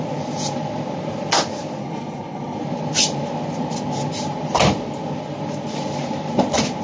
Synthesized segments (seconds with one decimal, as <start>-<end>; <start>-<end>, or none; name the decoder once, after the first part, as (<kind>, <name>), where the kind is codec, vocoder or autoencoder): 1.8-2.6 (codec, HILCodec)